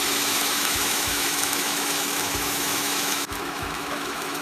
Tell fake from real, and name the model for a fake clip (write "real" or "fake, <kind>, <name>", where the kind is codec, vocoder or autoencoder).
fake, autoencoder, DAC-VAE